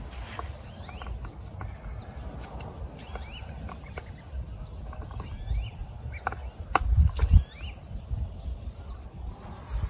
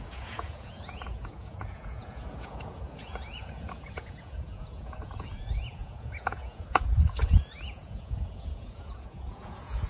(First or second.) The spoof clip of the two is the second